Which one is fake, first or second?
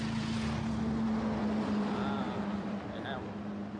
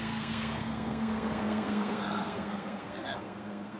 second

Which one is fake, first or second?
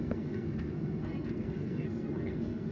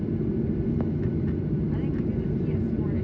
first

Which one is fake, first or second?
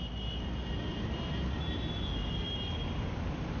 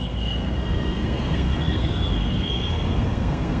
second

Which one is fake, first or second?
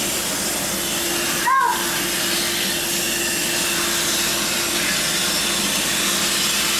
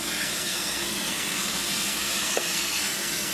second